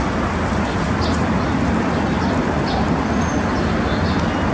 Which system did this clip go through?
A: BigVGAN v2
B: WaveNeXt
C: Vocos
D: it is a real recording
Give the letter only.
D